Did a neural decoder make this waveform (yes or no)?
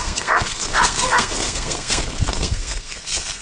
yes